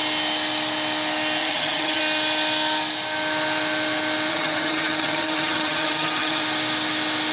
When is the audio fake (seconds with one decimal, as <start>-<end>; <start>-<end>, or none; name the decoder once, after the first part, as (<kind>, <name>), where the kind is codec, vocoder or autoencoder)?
1.4-2.0 (vocoder, HiFi-GAN); 4.3-6.4